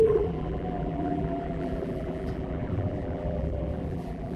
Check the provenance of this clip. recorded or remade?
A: remade